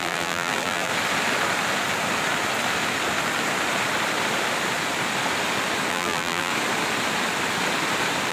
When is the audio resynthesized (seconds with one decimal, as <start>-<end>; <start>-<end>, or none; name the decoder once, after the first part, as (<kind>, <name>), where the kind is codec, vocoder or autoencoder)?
0.0-0.9 (vocoder, BigVGAN v2); 5.9-6.5